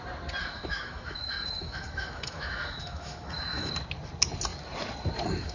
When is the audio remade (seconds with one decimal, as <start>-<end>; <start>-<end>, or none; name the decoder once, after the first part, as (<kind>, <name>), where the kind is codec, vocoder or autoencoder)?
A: 0.4-3.7 (autoencoder, DAC-VAE)